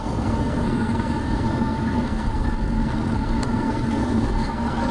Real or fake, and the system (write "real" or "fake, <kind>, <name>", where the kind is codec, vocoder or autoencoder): fake, codec, SNAC